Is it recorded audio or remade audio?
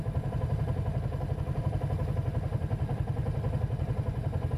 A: recorded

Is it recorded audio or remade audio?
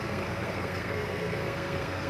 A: remade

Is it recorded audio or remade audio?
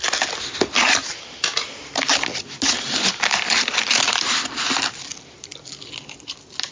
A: recorded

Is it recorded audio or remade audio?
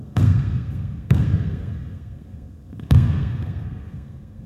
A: remade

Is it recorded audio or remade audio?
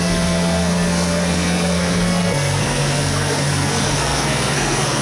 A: remade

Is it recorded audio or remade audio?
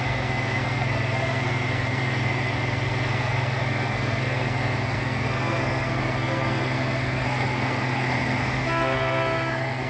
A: remade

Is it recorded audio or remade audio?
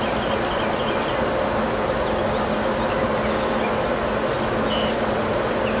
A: recorded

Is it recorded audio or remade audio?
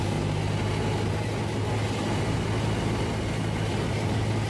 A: recorded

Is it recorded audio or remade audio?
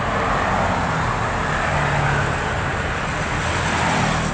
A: recorded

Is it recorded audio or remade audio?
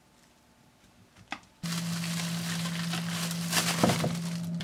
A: recorded